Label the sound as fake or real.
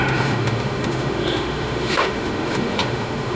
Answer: fake